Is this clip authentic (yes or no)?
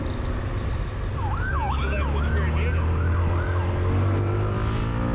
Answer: yes